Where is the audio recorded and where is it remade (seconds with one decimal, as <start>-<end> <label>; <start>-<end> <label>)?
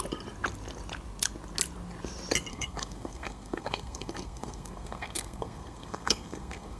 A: 0.0-2.5 recorded; 2.5-6.8 remade